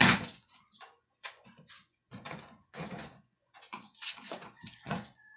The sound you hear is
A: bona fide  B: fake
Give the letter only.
B